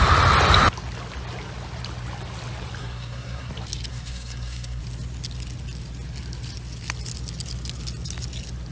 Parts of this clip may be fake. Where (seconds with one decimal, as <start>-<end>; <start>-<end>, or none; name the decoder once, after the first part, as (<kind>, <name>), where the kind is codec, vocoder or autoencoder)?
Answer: 2.8-3.5 (codec, SNAC); 3.9-4.8